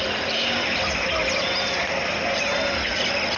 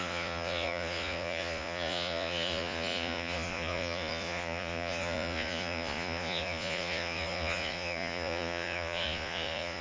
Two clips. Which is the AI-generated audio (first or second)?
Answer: second